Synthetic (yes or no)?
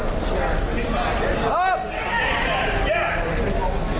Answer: no